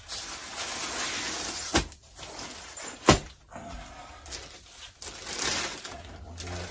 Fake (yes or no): no